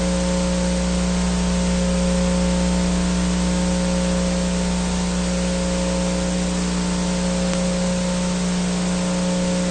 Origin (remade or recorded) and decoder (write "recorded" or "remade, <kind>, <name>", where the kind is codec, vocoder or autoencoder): recorded